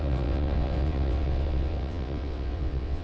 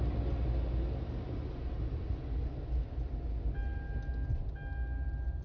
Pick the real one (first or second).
second